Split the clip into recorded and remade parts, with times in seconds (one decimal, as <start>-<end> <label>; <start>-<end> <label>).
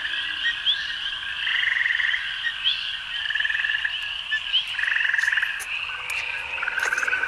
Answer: 0.0-1.5 recorded; 1.5-3.0 remade; 3.0-7.3 recorded